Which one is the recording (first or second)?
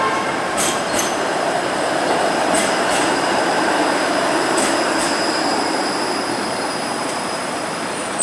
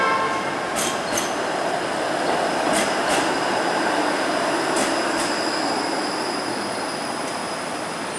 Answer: second